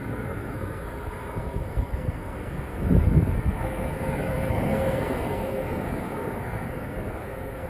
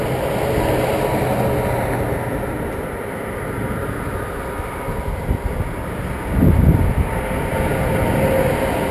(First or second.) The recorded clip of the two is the second